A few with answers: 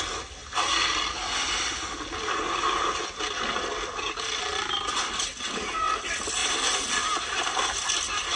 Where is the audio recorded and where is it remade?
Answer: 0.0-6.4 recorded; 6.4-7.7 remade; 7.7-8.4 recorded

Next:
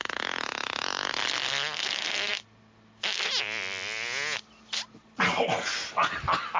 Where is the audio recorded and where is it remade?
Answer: 0.0-6.6 recorded

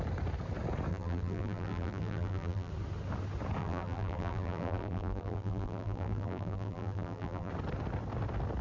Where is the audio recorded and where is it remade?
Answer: 0.0-0.9 recorded; 0.9-2.7 remade; 2.7-3.6 recorded; 3.6-7.5 remade; 7.5-8.6 recorded

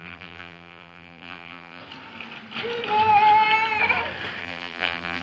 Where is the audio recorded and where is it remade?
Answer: 0.0-1.8 remade; 1.8-4.4 recorded; 4.4-5.2 remade